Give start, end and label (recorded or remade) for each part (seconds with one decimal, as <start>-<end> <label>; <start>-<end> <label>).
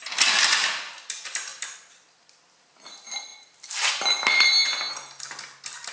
0.0-5.9 recorded